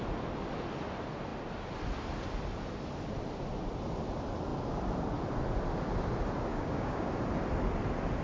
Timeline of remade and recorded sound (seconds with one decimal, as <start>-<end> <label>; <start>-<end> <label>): 0.0-6.5 recorded; 6.5-7.1 remade; 7.1-8.2 recorded